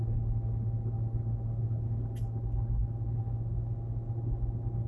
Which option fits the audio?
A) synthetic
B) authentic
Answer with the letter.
B